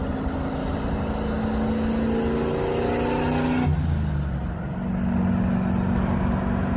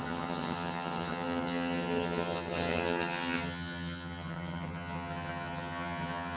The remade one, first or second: second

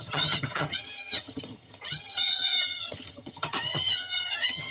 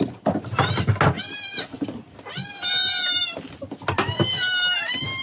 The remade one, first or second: first